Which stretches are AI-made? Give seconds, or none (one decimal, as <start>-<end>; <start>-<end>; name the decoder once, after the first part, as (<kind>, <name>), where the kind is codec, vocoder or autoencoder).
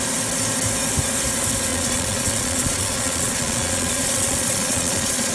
1.7-5.3 (vocoder, Vocos)